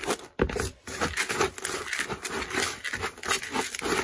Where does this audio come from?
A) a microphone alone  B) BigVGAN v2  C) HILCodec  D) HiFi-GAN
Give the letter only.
A